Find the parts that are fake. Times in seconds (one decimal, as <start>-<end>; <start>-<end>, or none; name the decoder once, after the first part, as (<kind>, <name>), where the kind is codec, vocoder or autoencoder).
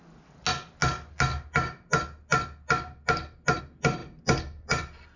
none